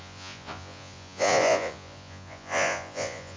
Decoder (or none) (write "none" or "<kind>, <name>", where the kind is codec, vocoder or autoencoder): vocoder, Vocos